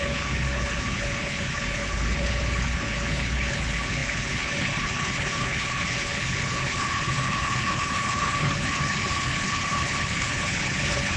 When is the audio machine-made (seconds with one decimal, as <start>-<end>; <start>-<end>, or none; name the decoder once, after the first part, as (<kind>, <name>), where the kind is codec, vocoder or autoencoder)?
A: 0.0-11.2 (codec, HILCodec)